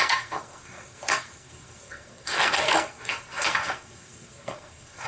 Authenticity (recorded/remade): remade